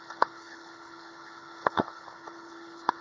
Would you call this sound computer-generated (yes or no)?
yes